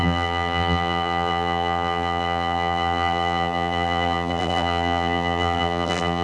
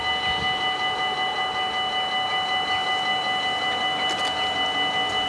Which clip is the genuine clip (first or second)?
second